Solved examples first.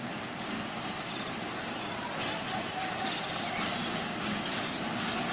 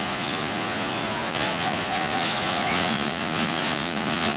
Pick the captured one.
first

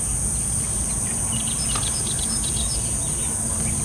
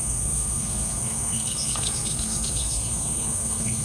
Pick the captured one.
first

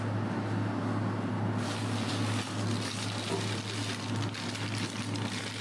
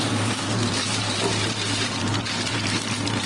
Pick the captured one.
first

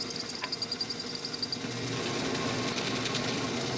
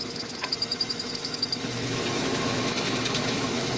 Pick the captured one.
first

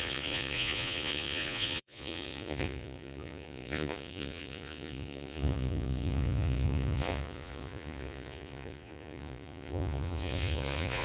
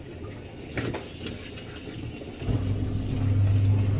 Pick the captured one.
second